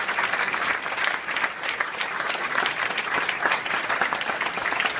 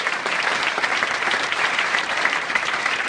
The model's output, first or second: second